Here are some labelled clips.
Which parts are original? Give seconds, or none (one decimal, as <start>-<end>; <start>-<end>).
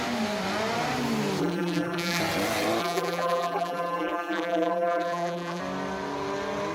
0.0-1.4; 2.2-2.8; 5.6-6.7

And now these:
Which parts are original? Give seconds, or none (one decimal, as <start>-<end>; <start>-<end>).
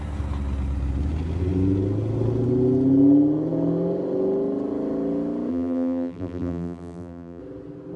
0.0-5.5; 7.4-8.0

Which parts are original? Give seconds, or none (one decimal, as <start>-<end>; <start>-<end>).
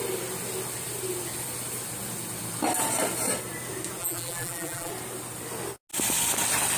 0.0-4.0; 4.9-6.8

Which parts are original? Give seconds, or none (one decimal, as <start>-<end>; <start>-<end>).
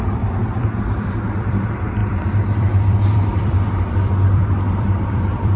none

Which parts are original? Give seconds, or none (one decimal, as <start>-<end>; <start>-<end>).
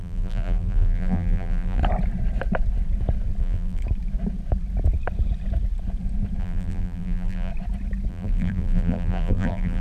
1.8-3.4; 3.8-6.4; 7.5-8.1